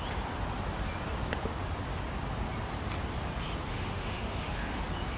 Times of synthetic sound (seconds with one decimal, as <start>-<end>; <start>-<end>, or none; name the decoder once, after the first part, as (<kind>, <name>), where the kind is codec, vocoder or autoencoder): 3.7-4.8 (autoencoder, DAC-VAE)